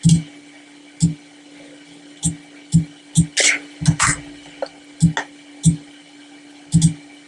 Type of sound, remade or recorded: recorded